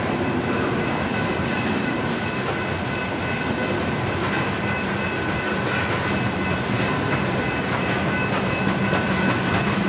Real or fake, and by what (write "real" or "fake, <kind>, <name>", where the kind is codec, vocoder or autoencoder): real